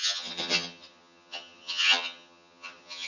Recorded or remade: remade